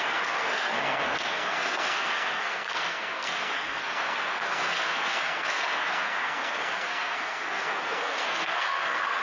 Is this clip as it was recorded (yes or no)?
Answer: no